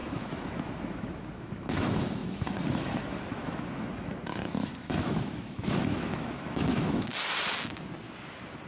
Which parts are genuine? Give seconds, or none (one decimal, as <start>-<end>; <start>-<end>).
7.1-8.7